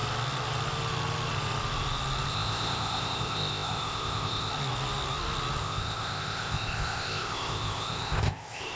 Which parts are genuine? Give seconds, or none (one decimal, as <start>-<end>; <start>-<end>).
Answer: 0.0-2.3; 4.5-5.6